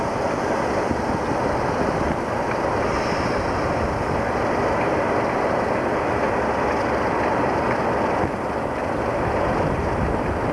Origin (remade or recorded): recorded